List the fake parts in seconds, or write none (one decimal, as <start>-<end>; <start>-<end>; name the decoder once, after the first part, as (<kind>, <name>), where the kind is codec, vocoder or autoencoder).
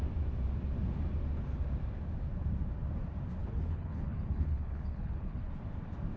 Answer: 3.4-5.5 (codec, HILCodec)